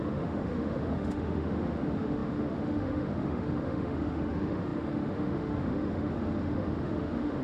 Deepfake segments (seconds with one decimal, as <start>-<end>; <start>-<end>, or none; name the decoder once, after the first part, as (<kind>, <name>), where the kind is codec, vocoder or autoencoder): 0.0-7.4 (autoencoder, DAC-VAE)